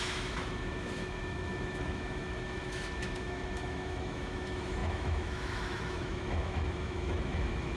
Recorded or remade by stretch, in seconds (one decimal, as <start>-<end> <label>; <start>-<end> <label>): 0.0-7.8 remade